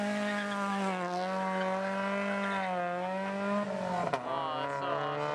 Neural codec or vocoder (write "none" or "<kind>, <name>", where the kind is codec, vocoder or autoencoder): none